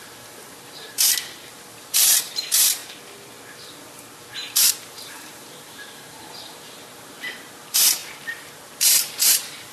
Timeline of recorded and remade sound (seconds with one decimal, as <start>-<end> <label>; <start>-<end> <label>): 0.0-2.8 remade; 2.8-4.7 recorded; 4.7-9.7 remade